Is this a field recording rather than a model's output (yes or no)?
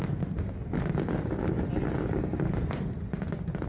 yes